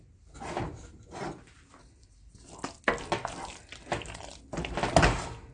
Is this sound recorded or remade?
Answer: recorded